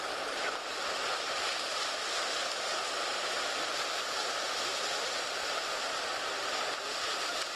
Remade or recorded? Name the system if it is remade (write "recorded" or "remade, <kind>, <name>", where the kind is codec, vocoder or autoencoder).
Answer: recorded